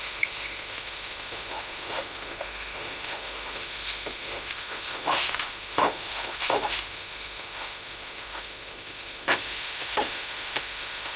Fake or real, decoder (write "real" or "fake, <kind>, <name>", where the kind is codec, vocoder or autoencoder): fake, autoencoder, DAC-VAE